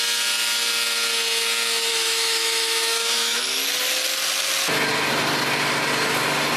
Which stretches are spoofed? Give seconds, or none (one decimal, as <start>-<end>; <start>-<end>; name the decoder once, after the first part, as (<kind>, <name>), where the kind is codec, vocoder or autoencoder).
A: 1.9-3.4 (autoencoder, DAC-VAE)